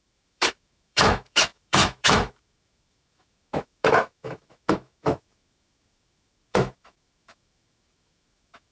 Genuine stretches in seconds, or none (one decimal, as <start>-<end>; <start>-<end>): none